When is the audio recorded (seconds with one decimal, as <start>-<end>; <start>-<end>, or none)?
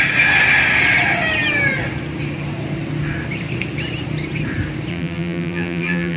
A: 0.0-4.9